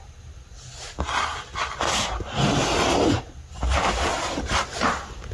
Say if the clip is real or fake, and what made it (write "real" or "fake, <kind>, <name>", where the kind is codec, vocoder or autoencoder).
real